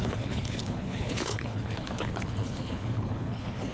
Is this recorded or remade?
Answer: remade